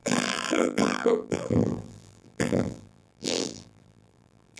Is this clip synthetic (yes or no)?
yes